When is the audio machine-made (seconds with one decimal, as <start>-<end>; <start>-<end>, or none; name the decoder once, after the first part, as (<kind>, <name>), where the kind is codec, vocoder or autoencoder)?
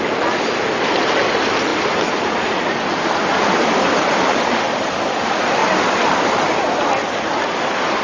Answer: 5.6-6.5 (vocoder, BigVGAN v2)